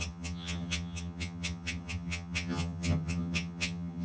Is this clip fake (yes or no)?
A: yes